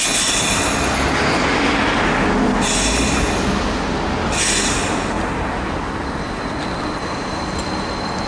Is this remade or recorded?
recorded